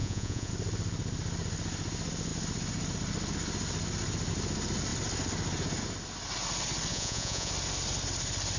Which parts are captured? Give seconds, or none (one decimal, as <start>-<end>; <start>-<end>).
0.5-6.9; 7.5-8.6

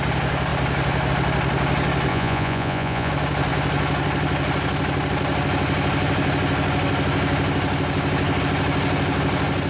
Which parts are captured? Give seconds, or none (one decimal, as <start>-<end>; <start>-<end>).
0.0-2.1; 3.1-9.7

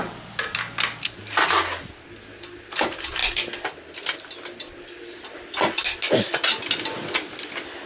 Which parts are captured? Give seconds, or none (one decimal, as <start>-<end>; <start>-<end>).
0.0-7.9

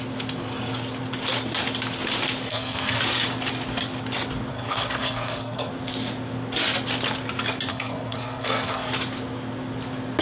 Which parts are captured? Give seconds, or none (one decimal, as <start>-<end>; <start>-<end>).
0.0-2.5; 3.0-4.5; 5.7-7.7; 8.9-10.2

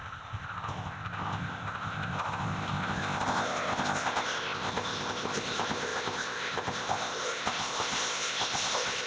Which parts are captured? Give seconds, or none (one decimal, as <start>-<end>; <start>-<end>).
none

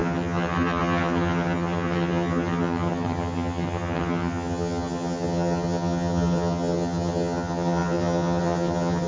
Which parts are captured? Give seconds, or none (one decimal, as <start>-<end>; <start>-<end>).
none